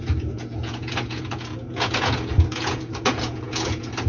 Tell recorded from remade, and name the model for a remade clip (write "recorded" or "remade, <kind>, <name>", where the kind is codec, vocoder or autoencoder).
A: remade, vocoder, Vocos